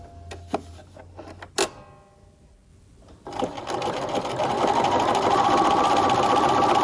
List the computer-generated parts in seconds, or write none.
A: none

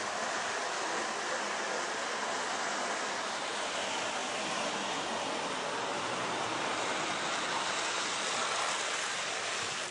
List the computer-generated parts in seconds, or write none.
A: 4.2-5.0 (vocoder, BigVGAN v2)